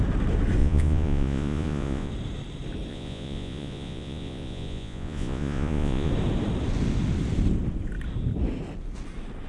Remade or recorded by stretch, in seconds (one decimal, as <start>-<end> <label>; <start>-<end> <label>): 0.0-0.6 recorded; 0.6-2.1 remade; 2.1-2.9 recorded; 2.9-6.1 remade; 6.1-9.5 recorded